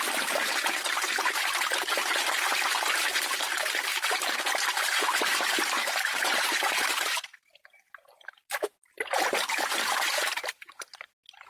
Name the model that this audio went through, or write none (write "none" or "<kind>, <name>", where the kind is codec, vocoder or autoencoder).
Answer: vocoder, BigVGAN v2